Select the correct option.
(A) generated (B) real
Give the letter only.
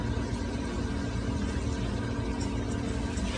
B